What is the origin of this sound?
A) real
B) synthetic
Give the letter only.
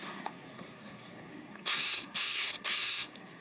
B